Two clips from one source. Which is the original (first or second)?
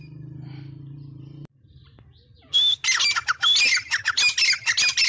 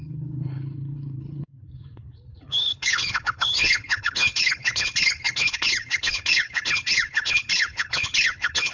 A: first